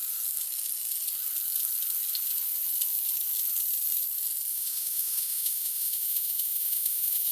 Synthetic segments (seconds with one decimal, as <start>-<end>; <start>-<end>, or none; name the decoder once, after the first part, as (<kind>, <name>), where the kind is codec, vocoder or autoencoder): 4.5-7.3 (autoencoder, DAC-VAE)